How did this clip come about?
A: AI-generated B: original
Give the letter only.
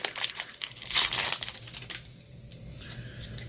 B